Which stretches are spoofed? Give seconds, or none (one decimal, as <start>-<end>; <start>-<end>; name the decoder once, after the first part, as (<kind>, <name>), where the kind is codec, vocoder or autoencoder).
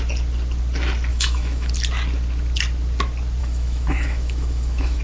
1.1-1.7 (autoencoder, DAC-VAE); 3.4-5.0